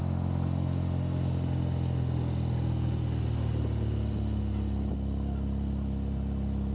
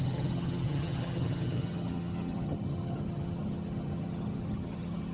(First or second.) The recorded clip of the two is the first